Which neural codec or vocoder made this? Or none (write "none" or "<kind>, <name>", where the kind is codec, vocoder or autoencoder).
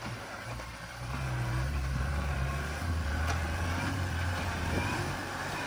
vocoder, BigVGAN v2